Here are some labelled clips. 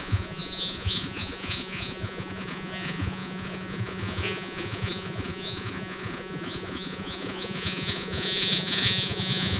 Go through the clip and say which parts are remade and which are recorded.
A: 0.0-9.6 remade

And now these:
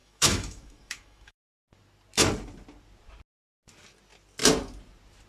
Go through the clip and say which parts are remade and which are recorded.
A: 0.0-1.4 remade; 1.4-5.3 recorded